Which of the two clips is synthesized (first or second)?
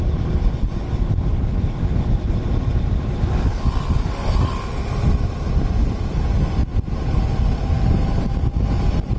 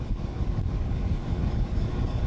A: second